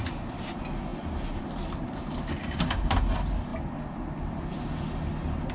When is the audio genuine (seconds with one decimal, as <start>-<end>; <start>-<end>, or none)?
0.0-2.4; 3.0-5.5

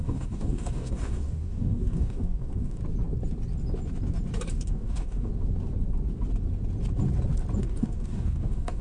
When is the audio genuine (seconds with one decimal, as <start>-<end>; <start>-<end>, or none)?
2.8-4.5; 5.3-7.6

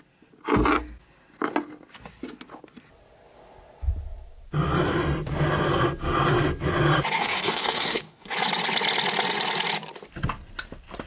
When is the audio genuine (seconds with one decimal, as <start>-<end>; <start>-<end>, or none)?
0.0-7.2; 8.3-11.1

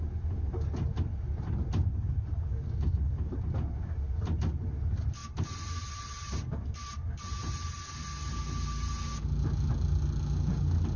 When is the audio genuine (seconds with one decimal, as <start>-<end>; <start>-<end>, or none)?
0.0-11.0

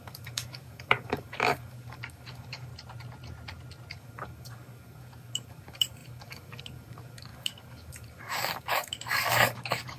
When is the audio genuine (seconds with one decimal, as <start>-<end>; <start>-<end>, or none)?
2.7-3.9

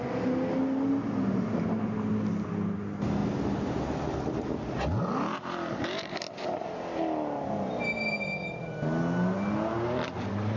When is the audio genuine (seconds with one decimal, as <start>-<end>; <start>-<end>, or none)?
0.0-10.6

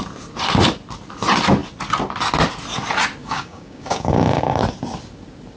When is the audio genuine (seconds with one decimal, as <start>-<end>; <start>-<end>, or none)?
0.0-3.2; 4.6-5.6